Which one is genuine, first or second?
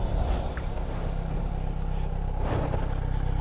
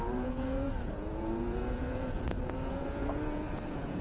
first